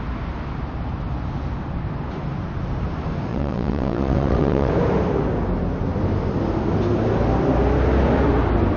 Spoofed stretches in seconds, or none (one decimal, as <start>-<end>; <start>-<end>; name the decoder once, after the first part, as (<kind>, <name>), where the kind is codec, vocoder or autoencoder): 3.3-4.7 (vocoder, WaveNeXt)